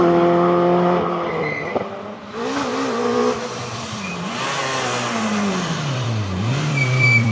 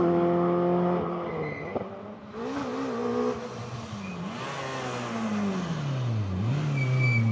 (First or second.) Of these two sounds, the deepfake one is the first